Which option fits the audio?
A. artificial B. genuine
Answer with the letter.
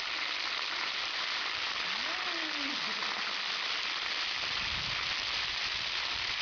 B